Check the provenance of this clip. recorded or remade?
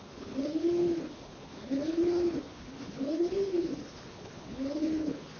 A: remade